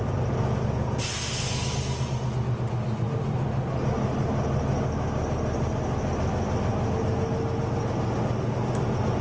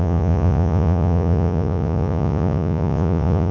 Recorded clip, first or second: first